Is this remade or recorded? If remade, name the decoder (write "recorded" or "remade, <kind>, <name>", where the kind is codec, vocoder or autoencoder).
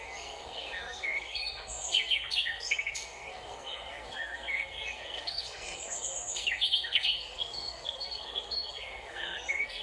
remade, codec, SNAC